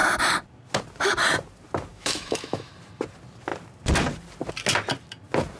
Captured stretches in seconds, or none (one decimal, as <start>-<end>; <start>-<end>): 0.0-1.9; 2.7-5.6